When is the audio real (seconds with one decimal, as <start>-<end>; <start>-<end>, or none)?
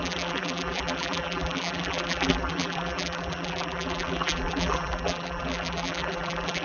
none